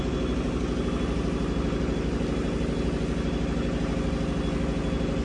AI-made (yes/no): no